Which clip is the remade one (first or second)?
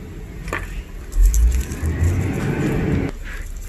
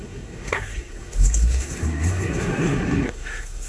second